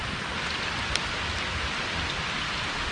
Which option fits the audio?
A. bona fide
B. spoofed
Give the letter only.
A